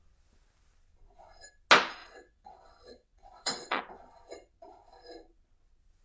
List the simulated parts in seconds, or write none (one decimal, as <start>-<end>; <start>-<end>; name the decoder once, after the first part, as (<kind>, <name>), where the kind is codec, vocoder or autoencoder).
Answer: 2.0-3.8 (vocoder, WaveNeXt)